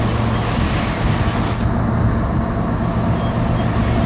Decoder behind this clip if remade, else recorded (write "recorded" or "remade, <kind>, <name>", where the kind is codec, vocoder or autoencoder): recorded